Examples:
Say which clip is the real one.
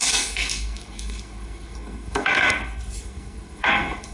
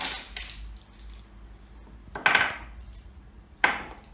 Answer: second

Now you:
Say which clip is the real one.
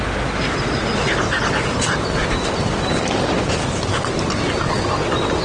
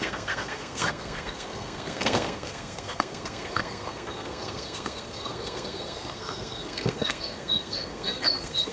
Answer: first